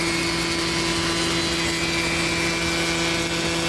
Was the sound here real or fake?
real